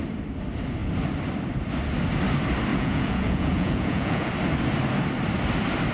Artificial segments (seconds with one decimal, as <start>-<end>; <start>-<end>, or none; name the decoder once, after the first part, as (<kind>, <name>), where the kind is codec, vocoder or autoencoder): 2.7-4.3 (vocoder, Vocos)